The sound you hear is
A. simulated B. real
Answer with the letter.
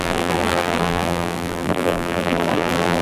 A